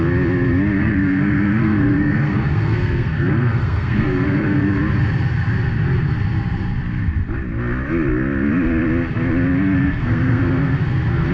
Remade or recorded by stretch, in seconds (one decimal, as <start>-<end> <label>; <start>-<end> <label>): 0.0-0.8 recorded; 0.8-4.8 remade; 4.8-9.8 recorded; 9.8-10.4 remade; 10.4-11.3 recorded